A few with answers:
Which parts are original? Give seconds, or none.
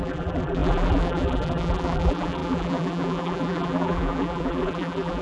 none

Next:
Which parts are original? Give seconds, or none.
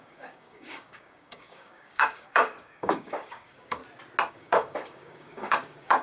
3.8-4.3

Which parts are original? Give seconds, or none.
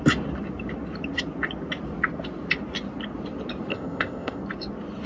0.0-3.7; 4.4-5.1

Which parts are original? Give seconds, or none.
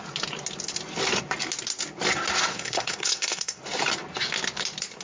0.0-2.5; 3.6-5.0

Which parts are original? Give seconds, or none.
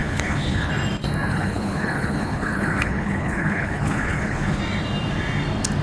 0.7-1.3; 4.6-5.8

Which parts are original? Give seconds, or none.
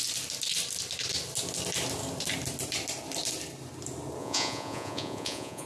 0.0-4.2